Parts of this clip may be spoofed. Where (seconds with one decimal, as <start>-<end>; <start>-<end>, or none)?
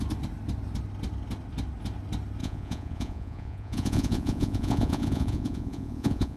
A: 2.4-6.4